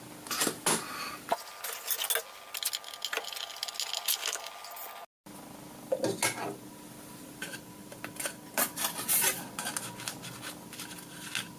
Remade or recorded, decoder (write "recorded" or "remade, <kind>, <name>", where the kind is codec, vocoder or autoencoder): recorded